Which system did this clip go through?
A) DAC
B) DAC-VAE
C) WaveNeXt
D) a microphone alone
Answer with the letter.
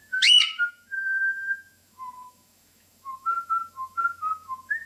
B